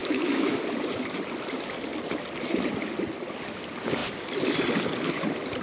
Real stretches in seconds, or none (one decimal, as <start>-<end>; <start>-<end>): 0.6-5.6